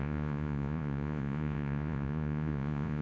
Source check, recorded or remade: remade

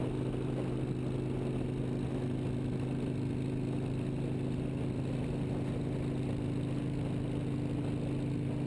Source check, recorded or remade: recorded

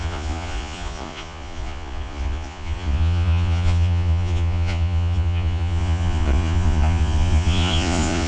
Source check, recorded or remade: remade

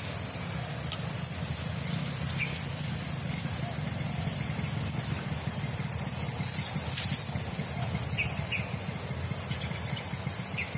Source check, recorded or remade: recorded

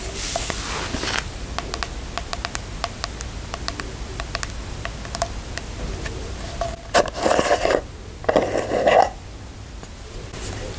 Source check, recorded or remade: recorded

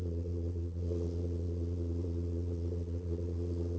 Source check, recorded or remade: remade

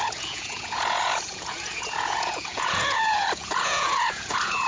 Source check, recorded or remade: remade